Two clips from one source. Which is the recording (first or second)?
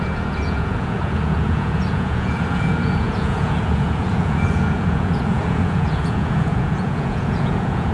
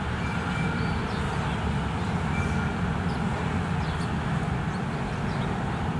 second